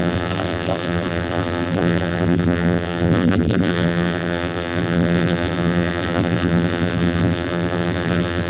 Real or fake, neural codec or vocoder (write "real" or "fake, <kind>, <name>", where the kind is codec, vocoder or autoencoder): fake, vocoder, BigVGAN v2